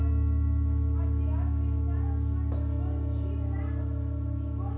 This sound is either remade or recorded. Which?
recorded